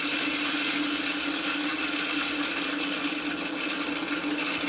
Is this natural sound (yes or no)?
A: yes